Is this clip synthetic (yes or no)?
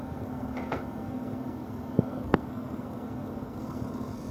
yes